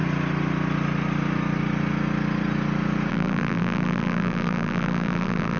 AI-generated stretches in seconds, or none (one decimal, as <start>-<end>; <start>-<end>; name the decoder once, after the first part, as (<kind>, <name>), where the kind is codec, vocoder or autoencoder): 3.1-5.6 (vocoder, BigVGAN v2)